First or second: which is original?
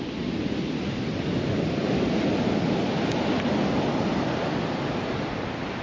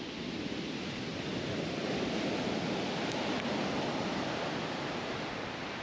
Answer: first